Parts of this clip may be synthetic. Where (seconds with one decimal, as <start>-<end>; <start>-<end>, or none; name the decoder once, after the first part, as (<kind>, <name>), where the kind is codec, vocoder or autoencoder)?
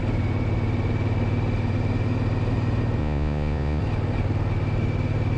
3.0-3.8 (vocoder, Vocos)